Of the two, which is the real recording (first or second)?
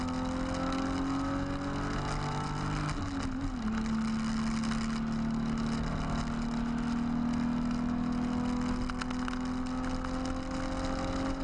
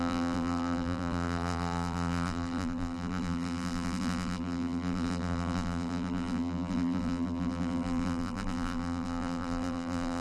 first